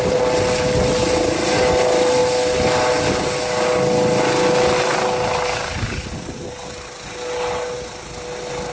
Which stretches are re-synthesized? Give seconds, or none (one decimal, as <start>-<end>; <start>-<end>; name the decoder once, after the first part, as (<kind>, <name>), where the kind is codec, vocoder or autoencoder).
none

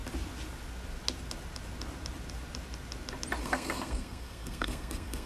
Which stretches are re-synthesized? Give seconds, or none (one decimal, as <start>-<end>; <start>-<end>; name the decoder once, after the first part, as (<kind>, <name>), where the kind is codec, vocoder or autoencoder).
3.4-5.3 (codec, SNAC)

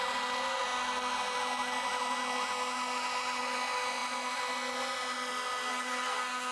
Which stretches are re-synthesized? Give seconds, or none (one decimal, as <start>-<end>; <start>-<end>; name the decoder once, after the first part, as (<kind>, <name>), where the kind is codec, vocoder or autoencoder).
5.7-6.5 (codec, SNAC)